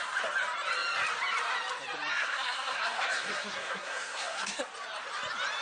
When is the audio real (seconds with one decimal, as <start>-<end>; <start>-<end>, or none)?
0.0-2.1; 4.6-5.6